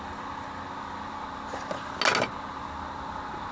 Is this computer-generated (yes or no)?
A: no